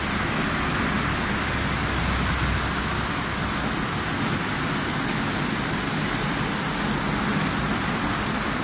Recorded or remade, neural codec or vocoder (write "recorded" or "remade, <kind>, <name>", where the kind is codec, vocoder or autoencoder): recorded